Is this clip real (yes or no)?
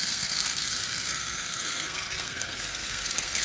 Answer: no